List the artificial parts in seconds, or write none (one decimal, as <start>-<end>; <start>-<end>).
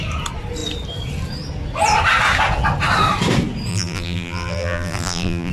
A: 3.7-5.5